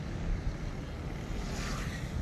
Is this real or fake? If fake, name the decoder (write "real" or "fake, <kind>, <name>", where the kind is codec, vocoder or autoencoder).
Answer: fake, vocoder, BigVGAN v2